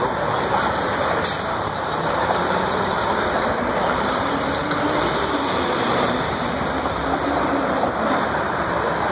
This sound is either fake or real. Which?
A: fake